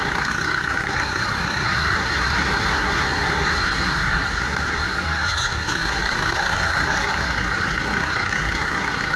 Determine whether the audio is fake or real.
fake